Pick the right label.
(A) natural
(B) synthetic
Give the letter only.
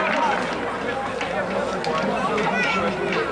A